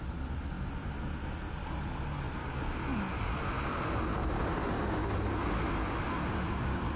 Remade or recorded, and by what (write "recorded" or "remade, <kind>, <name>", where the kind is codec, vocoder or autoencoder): recorded